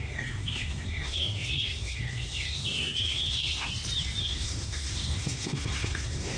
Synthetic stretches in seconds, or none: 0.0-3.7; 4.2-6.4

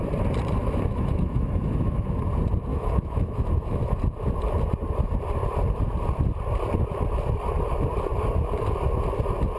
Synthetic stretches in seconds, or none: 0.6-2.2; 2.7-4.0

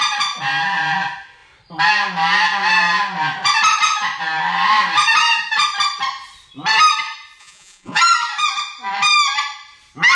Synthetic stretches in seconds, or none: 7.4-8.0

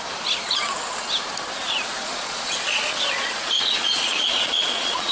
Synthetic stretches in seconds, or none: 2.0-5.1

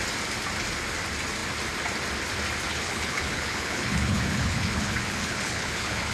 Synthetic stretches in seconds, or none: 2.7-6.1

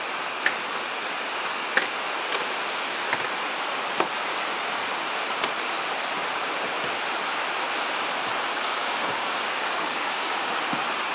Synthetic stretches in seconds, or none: 8.5-10.6